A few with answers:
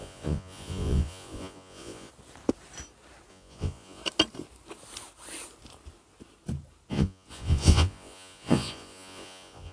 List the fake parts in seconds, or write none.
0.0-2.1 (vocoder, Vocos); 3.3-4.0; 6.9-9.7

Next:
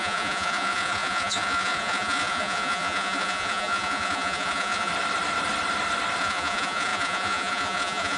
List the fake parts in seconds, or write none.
0.0-4.9 (vocoder, Vocos); 6.2-8.2

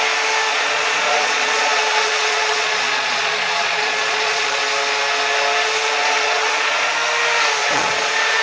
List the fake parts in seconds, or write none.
0.5-4.6 (vocoder, Vocos); 6.0-6.9; 7.6-8.4

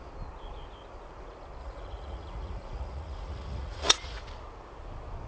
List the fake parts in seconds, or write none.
1.6-4.2 (vocoder, Vocos)

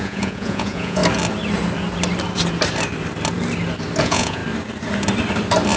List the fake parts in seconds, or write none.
0.0-1.0 (vocoder, Vocos); 4.0-4.4